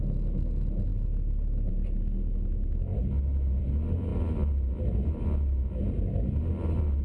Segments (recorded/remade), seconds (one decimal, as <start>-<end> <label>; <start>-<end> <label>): 0.0-7.0 recorded